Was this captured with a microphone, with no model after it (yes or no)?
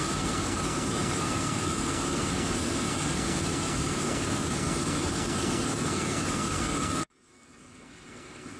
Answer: no